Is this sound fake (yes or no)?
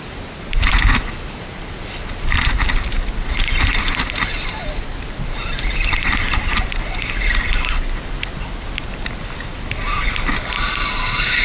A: no